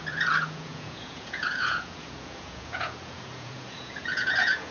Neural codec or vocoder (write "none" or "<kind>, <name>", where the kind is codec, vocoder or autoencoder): vocoder, Vocos